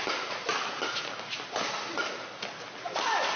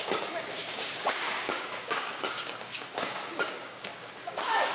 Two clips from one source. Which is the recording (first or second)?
first